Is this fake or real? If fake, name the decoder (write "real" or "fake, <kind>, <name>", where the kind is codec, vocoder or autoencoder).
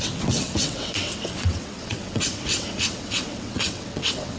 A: fake, vocoder, WaveNeXt